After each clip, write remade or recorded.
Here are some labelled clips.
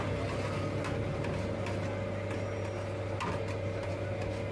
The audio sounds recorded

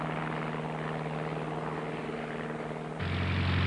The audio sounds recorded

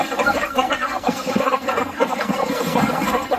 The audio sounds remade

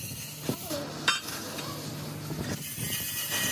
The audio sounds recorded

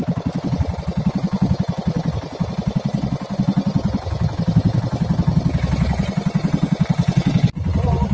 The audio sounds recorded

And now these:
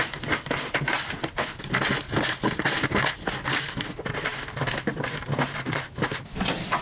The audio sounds recorded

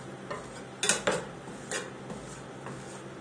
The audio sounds recorded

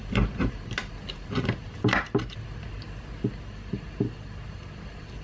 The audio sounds recorded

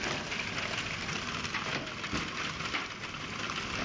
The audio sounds recorded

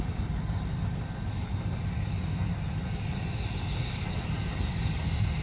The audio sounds recorded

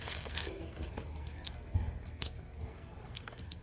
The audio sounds remade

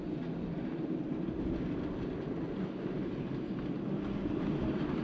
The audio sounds recorded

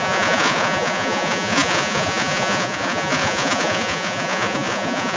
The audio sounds remade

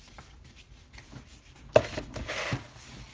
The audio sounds recorded